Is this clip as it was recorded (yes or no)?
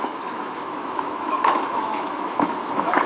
no